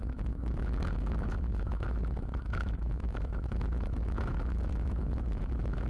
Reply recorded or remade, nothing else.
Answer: remade